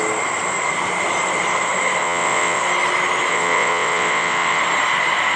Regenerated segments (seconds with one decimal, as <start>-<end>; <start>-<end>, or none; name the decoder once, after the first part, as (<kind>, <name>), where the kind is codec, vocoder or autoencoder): 2.0-2.6 (vocoder, WaveNeXt); 3.3-4.6